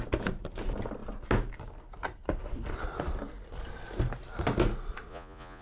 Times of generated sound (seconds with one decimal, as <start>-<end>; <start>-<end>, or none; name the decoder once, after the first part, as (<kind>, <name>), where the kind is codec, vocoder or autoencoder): 5.1-5.6 (vocoder, Vocos)